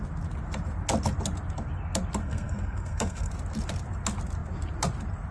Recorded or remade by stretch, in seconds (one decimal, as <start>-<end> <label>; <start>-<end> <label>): 0.0-2.2 recorded; 2.2-3.3 remade; 3.3-5.3 recorded